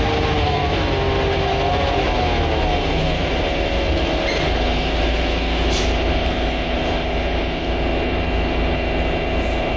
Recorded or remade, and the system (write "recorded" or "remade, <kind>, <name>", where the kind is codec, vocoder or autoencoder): recorded